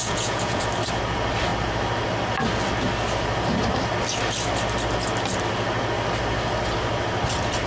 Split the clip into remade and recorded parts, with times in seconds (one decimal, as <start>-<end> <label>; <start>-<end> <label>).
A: 0.0-0.6 remade; 0.6-7.7 recorded